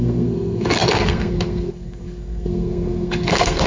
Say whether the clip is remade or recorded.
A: remade